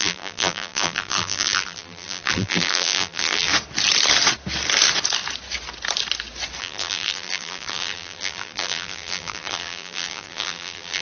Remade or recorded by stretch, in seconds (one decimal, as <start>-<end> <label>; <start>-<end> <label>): 0.0-3.5 remade; 3.5-6.6 recorded; 6.6-11.0 remade